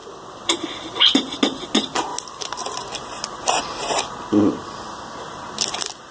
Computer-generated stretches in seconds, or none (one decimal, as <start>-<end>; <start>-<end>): none

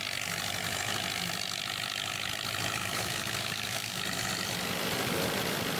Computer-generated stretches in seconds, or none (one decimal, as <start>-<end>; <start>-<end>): 2.8-4.0

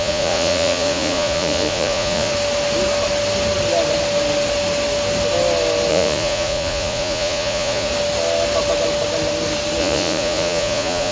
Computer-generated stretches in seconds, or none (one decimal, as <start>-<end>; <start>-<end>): 0.0-2.3; 5.9-7.9; 9.8-11.1

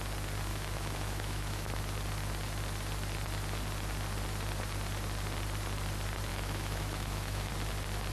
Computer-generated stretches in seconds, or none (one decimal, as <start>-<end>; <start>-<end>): 0.5-1.8; 6.3-7.5

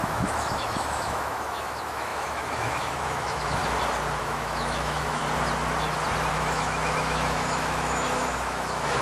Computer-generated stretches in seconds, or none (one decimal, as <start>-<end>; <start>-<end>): 0.0-3.6; 4.2-5.2; 6.3-9.0

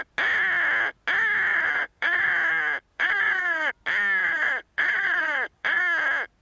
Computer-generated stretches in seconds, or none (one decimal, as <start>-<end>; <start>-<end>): 1.5-2.3; 2.9-3.7; 4.2-5.8

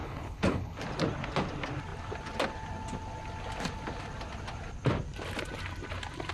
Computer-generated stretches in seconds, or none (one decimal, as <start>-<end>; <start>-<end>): 0.0-0.8

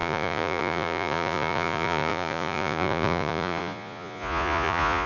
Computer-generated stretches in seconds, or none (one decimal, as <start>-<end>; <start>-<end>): 0.0-5.1